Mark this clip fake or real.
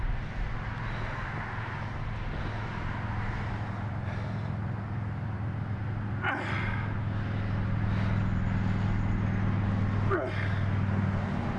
real